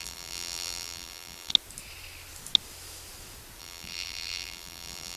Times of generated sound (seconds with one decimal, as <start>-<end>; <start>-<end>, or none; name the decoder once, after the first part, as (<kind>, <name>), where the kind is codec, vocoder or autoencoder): 0.0-1.5 (vocoder, BigVGAN v2); 3.6-5.2